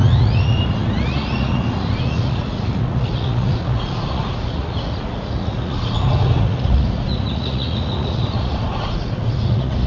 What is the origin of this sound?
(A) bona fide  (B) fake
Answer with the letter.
B